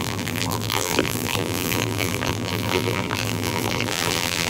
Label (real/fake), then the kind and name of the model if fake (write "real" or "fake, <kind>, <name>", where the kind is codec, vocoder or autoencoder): fake, vocoder, BigVGAN v2